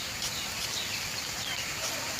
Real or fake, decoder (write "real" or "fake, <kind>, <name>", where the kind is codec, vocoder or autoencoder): real